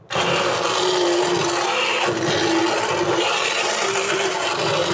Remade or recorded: recorded